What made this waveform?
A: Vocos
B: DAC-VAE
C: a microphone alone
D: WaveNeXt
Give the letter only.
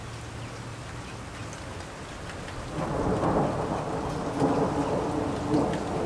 C